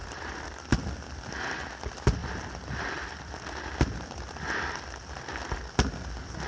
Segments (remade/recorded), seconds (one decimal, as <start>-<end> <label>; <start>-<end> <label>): 0.0-0.9 remade; 0.9-2.2 recorded; 2.2-2.7 remade; 2.7-6.5 recorded